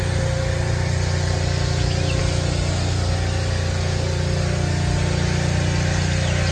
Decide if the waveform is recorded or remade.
recorded